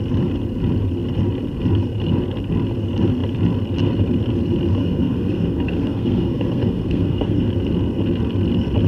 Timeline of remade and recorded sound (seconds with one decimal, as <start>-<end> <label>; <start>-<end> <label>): 0.0-4.8 recorded; 4.8-7.5 remade; 7.5-8.9 recorded